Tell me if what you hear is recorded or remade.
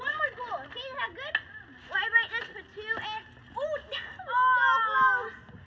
recorded